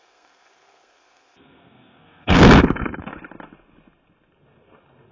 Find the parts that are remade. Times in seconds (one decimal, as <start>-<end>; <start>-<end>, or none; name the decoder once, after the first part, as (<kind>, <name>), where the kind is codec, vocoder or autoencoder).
0.0-2.4 (codec, SNAC)